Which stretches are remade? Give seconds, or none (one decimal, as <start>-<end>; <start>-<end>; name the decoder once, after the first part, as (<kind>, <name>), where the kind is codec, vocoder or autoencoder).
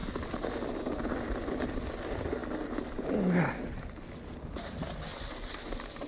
none